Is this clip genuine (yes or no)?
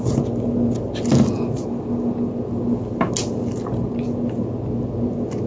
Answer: yes